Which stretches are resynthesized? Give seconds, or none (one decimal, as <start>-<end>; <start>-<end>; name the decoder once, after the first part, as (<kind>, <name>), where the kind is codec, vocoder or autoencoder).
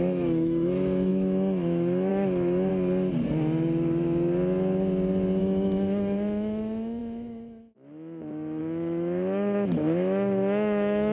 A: 0.0-2.7 (autoencoder, DAC-VAE); 5.4-11.1